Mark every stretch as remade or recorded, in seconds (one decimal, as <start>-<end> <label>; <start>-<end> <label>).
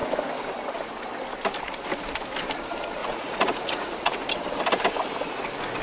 0.0-3.0 recorded; 3.0-4.2 remade; 4.2-5.8 recorded